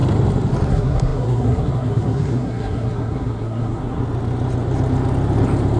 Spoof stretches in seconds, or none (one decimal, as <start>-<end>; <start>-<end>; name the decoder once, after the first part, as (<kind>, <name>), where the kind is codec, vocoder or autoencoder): 0.7-4.0 (codec, SNAC)